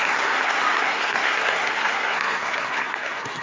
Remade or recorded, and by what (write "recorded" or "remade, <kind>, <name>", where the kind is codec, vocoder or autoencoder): remade, codec, SNAC